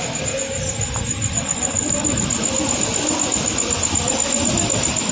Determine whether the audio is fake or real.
real